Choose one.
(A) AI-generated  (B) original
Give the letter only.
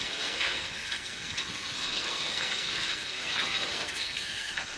A